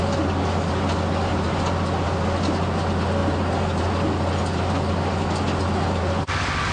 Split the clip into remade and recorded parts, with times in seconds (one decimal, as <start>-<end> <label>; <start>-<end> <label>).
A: 0.0-6.7 recorded